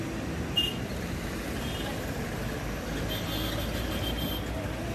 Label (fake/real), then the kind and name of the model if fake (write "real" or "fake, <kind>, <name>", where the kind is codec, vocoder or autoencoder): real